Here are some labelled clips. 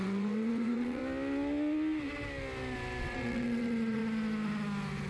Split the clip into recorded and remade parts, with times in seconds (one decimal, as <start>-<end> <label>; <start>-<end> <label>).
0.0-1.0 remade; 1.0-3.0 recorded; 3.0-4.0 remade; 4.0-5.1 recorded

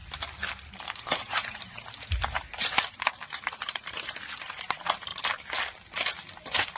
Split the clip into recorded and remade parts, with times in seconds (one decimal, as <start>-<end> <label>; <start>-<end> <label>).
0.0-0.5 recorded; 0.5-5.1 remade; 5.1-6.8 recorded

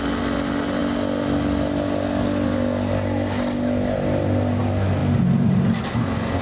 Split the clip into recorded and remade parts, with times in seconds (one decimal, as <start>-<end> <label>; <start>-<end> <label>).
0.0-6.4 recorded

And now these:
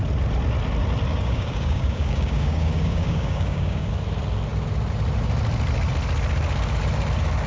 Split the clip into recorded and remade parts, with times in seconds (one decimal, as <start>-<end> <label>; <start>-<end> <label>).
0.0-1.1 recorded; 1.1-3.9 remade; 3.9-7.5 recorded

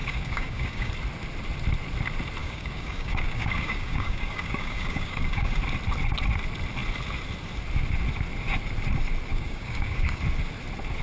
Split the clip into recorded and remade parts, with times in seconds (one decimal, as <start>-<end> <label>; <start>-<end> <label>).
0.0-0.9 remade; 0.9-2.4 recorded; 2.4-5.6 remade; 5.6-9.3 recorded; 9.3-10.2 remade; 10.2-11.0 recorded

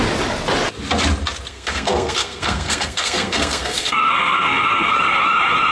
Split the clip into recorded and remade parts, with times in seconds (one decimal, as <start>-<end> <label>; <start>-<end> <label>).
0.0-1.5 recorded; 1.5-4.9 remade; 4.9-5.7 recorded